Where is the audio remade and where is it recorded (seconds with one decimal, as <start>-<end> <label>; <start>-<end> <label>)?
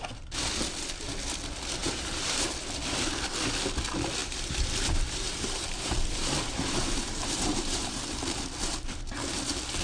0.0-1.8 recorded; 1.8-2.5 remade; 2.5-4.2 recorded; 4.2-8.0 remade; 8.0-9.8 recorded